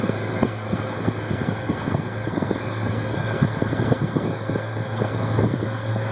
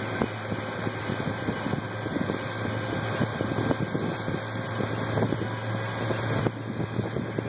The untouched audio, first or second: second